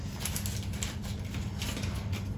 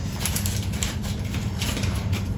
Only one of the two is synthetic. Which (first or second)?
second